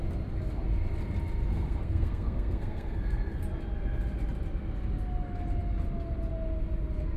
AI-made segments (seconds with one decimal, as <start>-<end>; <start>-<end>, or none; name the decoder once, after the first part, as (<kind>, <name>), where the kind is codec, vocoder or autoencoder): 1.5-3.4 (codec, SNAC)